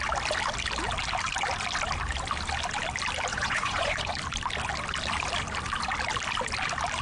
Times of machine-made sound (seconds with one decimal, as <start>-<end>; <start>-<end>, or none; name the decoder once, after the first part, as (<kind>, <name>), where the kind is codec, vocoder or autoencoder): 3.3-4.1 (vocoder, Vocos)